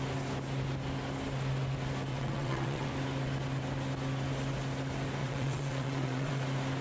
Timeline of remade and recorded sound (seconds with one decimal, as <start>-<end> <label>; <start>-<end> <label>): 0.0-2.1 recorded; 2.1-2.9 remade; 2.9-5.2 recorded; 5.2-6.3 remade; 6.3-6.8 recorded